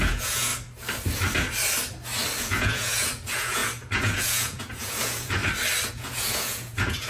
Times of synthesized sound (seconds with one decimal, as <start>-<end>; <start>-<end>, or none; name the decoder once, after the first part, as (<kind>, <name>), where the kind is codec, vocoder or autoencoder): 0.0-0.5 (vocoder, Vocos); 2.4-5.4; 5.9-7.1